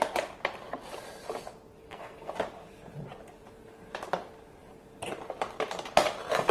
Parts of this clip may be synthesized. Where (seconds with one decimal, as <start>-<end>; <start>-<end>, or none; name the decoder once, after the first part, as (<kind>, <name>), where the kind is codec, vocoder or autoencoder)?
1.8-2.3 (codec, SNAC)